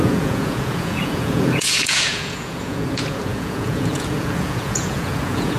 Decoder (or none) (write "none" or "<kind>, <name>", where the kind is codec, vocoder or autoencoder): vocoder, Vocos